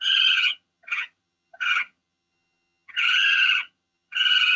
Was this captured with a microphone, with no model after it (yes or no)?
no